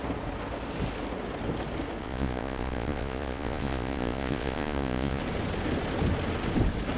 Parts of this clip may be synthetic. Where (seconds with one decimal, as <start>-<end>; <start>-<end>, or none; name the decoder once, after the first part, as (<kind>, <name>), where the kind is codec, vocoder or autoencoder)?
2.0-5.2 (vocoder, Vocos)